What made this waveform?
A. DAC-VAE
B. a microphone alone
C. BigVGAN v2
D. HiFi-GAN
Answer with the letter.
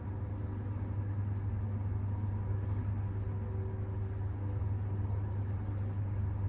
B